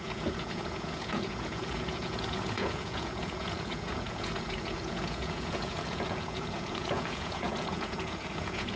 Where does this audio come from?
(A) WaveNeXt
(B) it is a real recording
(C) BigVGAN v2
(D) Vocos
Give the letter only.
D